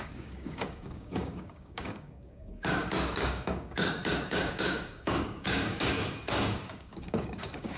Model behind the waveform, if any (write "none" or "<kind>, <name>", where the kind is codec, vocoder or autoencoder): codec, DAC